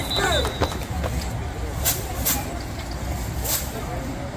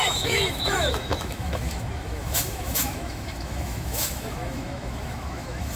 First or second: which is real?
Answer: first